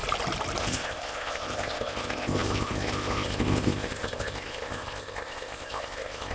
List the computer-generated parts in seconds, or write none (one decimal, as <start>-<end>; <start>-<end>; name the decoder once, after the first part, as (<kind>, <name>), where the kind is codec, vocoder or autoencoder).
0.6-6.3 (codec, ZipCodec)